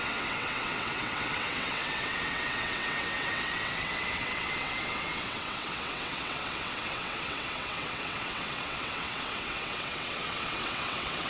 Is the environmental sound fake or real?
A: fake